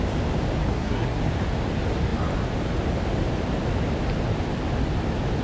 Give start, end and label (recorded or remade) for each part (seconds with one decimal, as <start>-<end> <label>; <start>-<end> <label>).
0.0-0.7 recorded; 0.7-1.2 remade; 1.2-5.4 recorded